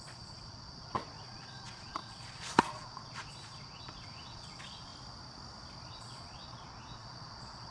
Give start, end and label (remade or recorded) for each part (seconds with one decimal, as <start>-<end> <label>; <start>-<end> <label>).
0.0-4.9 remade; 4.9-5.9 recorded; 5.9-7.7 remade